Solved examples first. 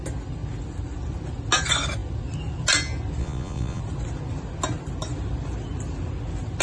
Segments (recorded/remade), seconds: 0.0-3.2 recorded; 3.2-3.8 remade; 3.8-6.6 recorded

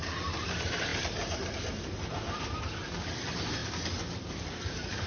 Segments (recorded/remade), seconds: 0.0-3.6 remade; 3.6-4.3 recorded; 4.3-5.1 remade

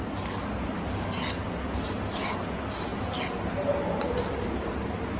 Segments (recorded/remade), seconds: 0.0-5.2 recorded

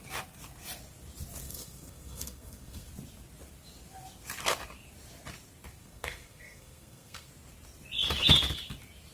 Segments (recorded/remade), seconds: 0.0-1.4 recorded; 1.4-2.9 remade; 2.9-5.8 recorded; 5.8-7.3 remade; 7.3-9.1 recorded

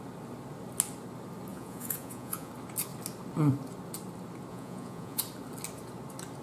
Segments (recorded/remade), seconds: 0.0-1.5 recorded; 1.5-2.5 remade; 2.5-4.5 recorded; 4.5-5.2 remade; 5.2-6.4 recorded

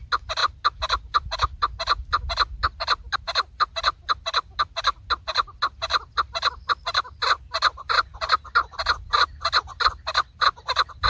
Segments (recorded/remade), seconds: 0.0-11.1 recorded

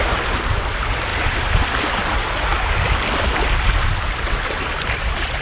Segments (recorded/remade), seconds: 0.0-5.4 recorded